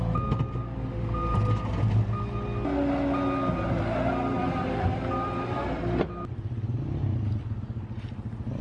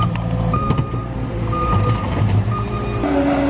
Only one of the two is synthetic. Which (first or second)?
second